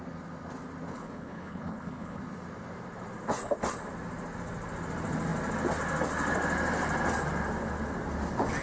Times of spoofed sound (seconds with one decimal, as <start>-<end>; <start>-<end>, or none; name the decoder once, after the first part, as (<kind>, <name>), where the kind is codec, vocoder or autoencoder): 0.9-2.2 (codec, HILCodec)